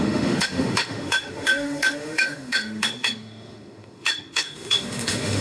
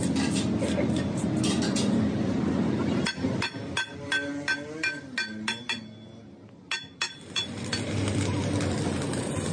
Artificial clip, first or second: first